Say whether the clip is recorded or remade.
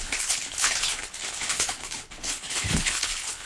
remade